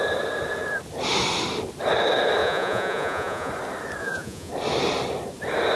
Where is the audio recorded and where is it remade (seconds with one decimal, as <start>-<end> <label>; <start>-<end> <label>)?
0.0-2.4 recorded; 2.4-3.5 remade; 3.5-4.0 recorded; 4.0-4.5 remade; 4.5-5.8 recorded

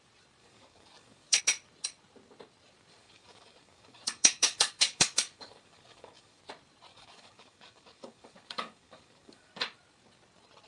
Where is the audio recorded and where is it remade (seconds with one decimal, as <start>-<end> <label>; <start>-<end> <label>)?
0.0-0.4 recorded; 0.4-1.4 remade; 1.4-3.0 recorded; 3.0-6.4 remade; 6.4-6.9 recorded; 6.9-9.5 remade; 9.5-10.7 recorded

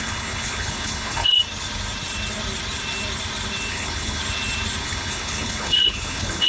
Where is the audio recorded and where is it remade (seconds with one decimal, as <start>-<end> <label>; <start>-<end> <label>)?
0.0-1.4 remade; 1.4-3.7 recorded; 3.7-4.2 remade; 4.2-4.8 recorded; 4.8-6.5 remade

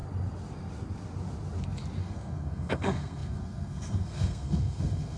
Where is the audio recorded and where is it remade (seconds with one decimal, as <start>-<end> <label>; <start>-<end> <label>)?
0.0-2.0 recorded; 2.0-5.2 remade

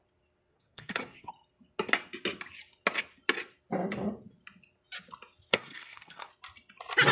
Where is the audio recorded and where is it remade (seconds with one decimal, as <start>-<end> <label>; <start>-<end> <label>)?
0.0-0.5 recorded; 0.5-1.3 remade; 1.3-5.5 recorded; 5.5-6.3 remade; 6.3-7.1 recorded

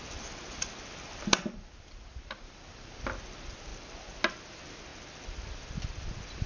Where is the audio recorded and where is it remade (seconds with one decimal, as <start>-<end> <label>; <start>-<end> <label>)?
0.0-6.5 recorded